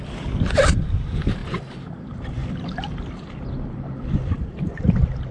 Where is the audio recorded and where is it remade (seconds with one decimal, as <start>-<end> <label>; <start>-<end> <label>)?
0.0-1.4 remade; 1.4-2.0 recorded; 2.0-5.3 remade